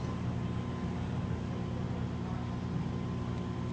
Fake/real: real